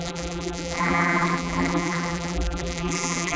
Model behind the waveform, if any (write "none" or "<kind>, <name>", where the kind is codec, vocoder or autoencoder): vocoder, BigVGAN v2